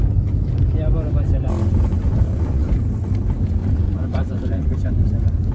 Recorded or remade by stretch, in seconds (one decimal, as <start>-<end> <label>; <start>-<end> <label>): 0.0-1.9 recorded; 1.9-2.8 remade; 2.8-3.6 recorded; 3.6-4.9 remade; 4.9-5.5 recorded